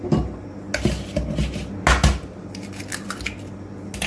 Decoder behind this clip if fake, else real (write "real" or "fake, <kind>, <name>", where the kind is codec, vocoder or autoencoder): real